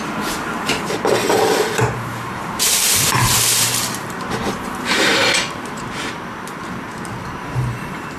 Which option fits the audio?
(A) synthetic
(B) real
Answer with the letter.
A